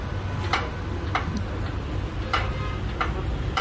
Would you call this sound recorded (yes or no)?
yes